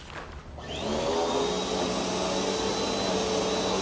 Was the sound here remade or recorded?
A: recorded